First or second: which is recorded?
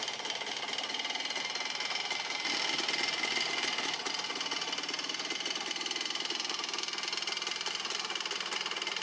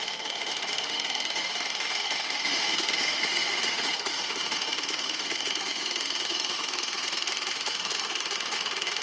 first